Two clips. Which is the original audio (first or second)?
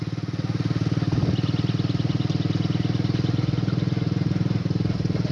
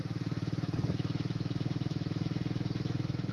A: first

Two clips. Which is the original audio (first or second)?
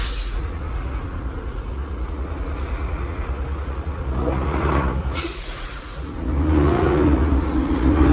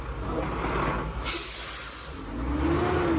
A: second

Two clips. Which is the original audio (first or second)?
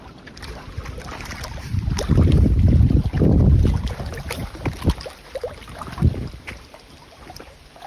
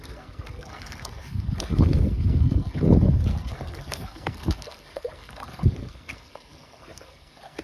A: first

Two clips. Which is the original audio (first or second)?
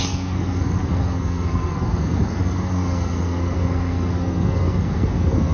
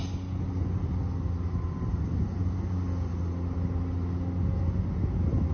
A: second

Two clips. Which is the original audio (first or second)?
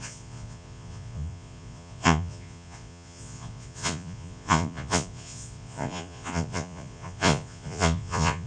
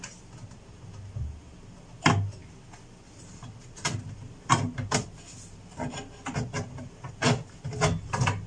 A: second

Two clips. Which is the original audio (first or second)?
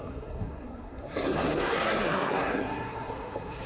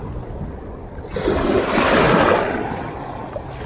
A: second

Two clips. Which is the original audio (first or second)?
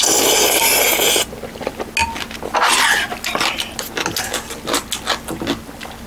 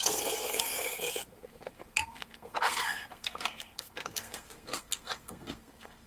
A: first